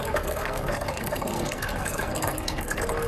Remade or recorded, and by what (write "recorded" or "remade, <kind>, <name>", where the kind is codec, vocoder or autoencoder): remade, codec, SNAC